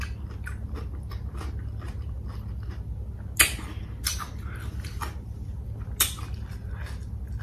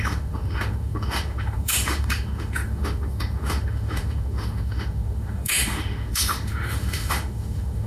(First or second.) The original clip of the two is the first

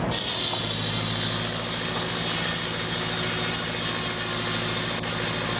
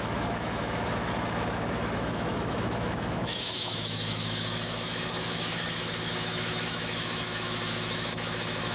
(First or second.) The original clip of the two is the first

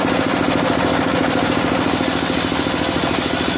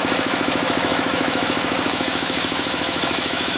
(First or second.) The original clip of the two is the first